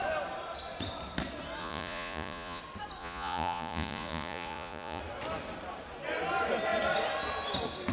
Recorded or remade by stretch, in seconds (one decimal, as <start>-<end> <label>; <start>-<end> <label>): 0.0-1.6 recorded; 1.6-2.6 remade; 2.6-3.0 recorded; 3.0-5.0 remade; 5.0-7.9 recorded